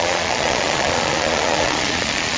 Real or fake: fake